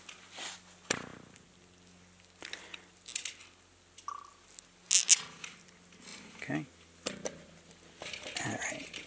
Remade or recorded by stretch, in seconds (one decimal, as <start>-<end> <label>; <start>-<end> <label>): 0.0-9.1 recorded